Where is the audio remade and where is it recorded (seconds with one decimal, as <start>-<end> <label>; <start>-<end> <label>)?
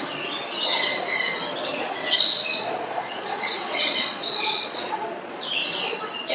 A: 0.0-1.7 recorded; 1.7-5.5 remade; 5.5-6.3 recorded